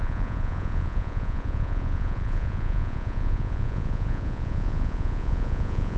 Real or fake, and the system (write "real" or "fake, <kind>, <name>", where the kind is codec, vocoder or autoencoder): fake, vocoder, Vocos